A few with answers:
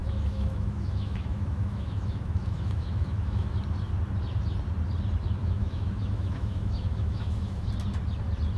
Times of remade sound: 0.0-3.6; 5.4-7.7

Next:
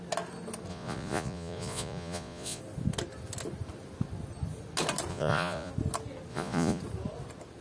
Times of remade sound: 0.7-2.6; 5.1-5.7; 6.3-6.8

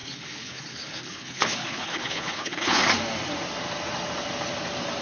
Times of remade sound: 0.0-2.8

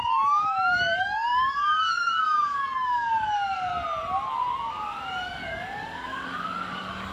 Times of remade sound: 0.0-3.7; 4.7-7.1

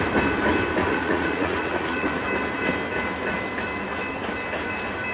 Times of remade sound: 0.8-2.2

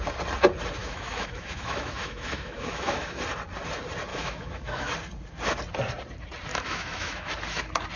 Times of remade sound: 0.8-3.2; 4.1-4.9; 6.5-7.3

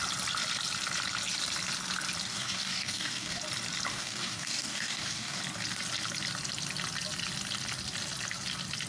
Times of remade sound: 2.3-3.4; 3.9-5.4

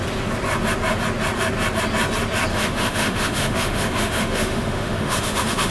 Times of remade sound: 2.5-5.7